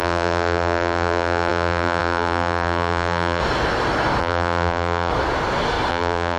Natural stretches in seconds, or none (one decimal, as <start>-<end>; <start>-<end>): 3.4-4.2; 5.1-5.9